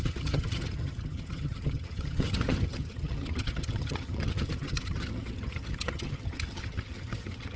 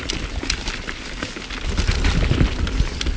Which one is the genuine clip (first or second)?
second